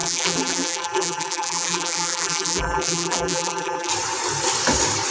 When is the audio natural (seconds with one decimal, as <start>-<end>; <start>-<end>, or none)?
3.9-5.1